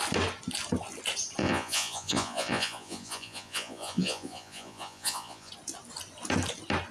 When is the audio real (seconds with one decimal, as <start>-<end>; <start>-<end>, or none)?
0.0-1.4; 5.5-6.9